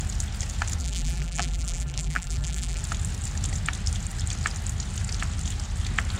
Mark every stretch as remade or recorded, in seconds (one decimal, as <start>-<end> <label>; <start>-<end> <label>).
0.0-0.8 recorded; 0.8-2.8 remade; 2.8-6.2 recorded